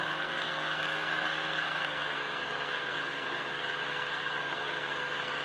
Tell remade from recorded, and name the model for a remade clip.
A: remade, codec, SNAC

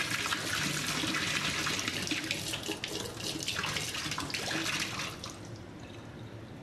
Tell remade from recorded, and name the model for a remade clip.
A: recorded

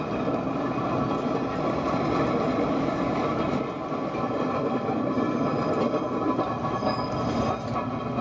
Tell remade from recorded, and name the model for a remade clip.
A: recorded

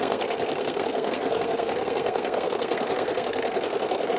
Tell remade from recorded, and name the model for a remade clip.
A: remade, codec, SNAC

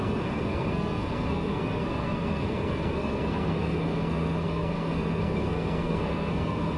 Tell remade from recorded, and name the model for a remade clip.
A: remade, codec, SNAC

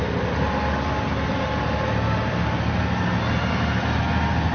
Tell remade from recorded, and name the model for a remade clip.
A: recorded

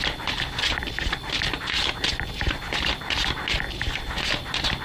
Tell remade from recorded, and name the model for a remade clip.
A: recorded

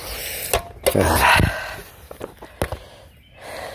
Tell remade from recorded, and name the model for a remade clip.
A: recorded